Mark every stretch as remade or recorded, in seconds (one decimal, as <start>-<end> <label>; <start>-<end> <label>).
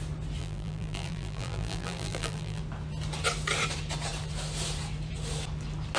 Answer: 0.0-0.4 recorded; 0.4-2.6 remade; 2.6-6.0 recorded